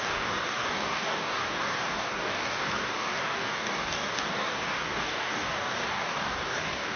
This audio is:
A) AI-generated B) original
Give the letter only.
A